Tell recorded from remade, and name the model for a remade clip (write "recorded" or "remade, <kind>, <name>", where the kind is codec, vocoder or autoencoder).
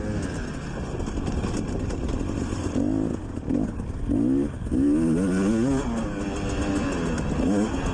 recorded